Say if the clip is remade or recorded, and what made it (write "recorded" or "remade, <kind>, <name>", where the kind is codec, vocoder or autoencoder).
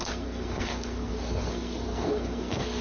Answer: remade, codec, SNAC